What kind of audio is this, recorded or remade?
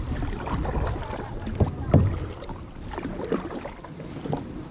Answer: recorded